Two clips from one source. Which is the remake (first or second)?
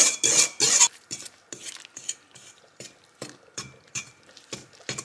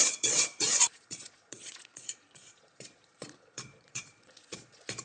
second